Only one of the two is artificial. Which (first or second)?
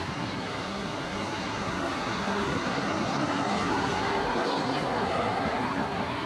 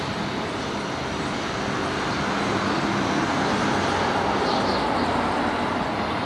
first